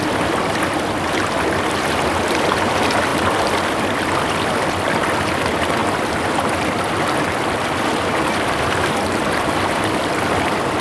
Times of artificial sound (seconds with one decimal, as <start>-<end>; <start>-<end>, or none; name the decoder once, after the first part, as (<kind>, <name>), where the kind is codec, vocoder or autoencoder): none